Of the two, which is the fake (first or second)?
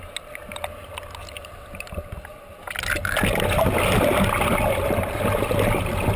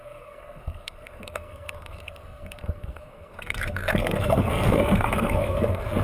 second